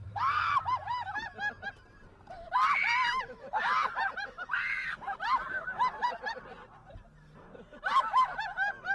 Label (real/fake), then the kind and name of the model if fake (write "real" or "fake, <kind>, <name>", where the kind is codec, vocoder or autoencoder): real